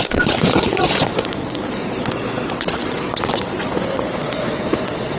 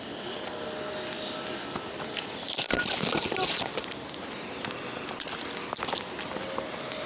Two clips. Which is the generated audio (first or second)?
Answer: first